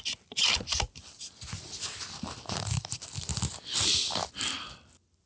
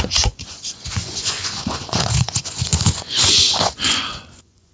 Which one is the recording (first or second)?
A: first